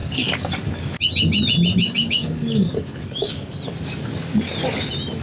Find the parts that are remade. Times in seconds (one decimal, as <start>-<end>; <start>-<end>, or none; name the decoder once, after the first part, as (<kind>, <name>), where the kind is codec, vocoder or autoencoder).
0.0-1.0 (codec, DAC); 1.8-3.5